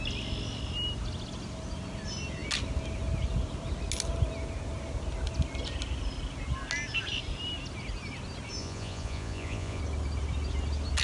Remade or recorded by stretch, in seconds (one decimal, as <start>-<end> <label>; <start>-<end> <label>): 0.0-8.6 recorded; 8.6-9.8 remade; 9.8-11.0 recorded